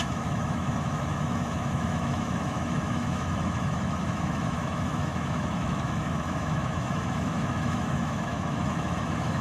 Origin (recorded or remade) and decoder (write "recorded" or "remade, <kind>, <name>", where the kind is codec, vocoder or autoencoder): remade, autoencoder, DAC-VAE